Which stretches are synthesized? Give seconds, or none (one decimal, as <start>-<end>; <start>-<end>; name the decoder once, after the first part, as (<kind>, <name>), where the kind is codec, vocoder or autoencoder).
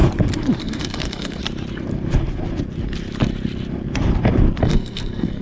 0.6-1.4 (codec, SNAC); 4.6-5.4